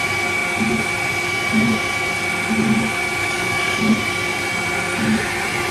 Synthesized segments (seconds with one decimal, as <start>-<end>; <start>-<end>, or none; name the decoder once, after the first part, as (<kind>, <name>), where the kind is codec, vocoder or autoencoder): 3.2-3.9 (codec, DAC)